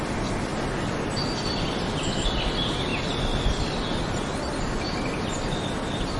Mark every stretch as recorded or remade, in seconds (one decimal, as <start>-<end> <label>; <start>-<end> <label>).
0.0-6.2 recorded